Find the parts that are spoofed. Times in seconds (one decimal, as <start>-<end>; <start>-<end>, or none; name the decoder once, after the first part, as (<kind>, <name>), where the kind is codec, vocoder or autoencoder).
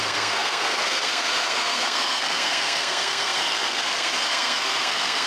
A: 0.0-5.3 (codec, SNAC)